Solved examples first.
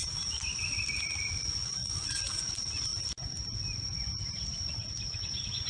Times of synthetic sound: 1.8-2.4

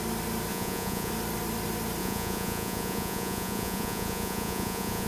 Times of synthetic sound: 0.5-1.1; 2.0-5.1

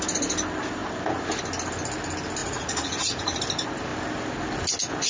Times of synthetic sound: 2.4-3.4

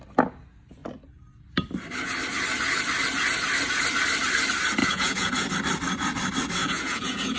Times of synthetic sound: 4.8-5.5; 6.6-7.4

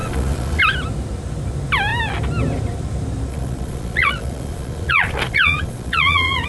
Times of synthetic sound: 0.0-0.6; 3.3-6.5

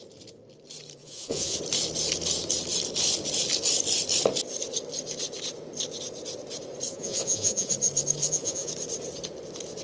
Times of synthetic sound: 1.0-1.6; 6.9-7.7; 8.2-8.7

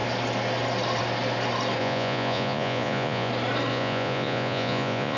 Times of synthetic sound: 1.8-3.3; 3.7-5.2

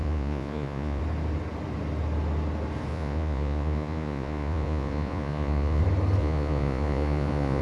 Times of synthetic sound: 0.0-1.0; 2.9-5.8; 6.2-7.6